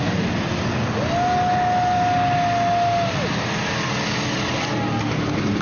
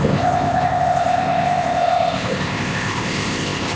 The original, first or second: first